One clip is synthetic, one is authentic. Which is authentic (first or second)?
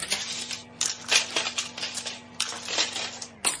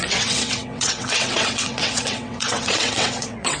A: first